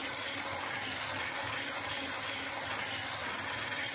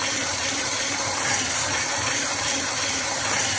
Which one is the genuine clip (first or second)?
first